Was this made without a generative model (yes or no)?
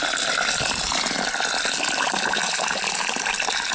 yes